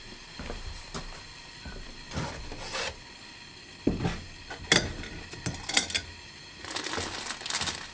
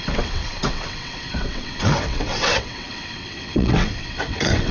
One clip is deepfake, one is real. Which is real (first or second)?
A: first